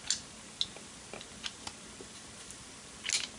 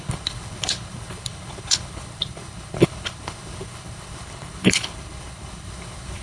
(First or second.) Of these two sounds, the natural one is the first